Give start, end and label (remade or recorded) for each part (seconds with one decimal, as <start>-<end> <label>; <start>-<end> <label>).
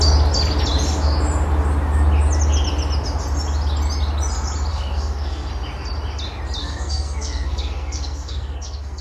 0.0-4.7 recorded; 4.7-5.5 remade; 5.5-6.6 recorded; 6.6-9.0 remade